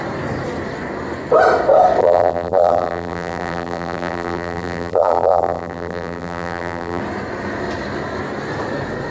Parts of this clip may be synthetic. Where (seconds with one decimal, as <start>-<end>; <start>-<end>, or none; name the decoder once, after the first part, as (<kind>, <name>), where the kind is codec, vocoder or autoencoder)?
2.0-7.0 (vocoder, BigVGAN v2)